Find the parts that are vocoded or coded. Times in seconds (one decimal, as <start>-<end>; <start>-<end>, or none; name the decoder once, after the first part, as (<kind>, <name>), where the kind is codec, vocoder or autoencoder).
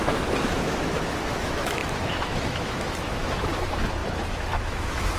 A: 0.0-5.2 (autoencoder, DAC-VAE)